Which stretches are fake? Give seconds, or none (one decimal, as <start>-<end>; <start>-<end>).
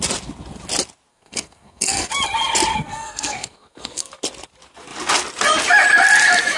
1.1-2.1; 2.7-4.1